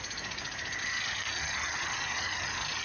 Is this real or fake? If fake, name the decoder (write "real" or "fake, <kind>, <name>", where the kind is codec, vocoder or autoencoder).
real